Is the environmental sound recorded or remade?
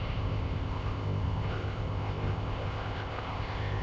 remade